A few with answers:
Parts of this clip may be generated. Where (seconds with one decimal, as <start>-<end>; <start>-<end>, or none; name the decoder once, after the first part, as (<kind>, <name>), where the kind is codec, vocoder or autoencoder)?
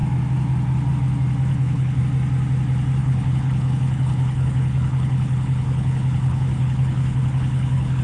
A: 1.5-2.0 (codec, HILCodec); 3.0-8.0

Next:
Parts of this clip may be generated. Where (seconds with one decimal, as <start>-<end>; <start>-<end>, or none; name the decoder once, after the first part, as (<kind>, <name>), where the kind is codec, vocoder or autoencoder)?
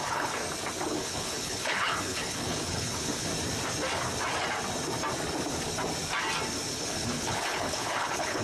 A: 0.0-0.4 (codec, HILCodec); 0.9-3.3; 6.7-8.4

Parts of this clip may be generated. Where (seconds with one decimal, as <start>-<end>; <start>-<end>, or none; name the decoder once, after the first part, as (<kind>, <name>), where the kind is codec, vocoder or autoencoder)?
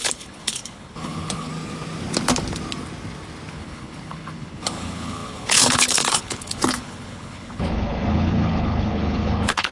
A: 0.0-1.5 (codec, HILCodec); 3.5-9.7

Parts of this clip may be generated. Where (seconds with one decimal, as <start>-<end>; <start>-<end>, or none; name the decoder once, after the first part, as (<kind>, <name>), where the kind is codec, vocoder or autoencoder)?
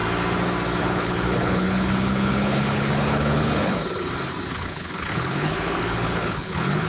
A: 0.8-3.7 (codec, HILCodec); 4.5-6.9